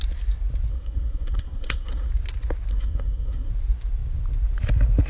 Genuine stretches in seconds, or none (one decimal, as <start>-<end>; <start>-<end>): 0.0-0.7; 2.1-2.7; 3.5-5.1